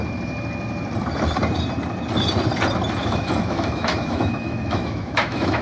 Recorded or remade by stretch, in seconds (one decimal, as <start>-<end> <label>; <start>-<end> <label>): 0.0-3.0 recorded; 3.0-5.6 remade